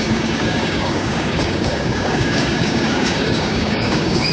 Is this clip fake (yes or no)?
yes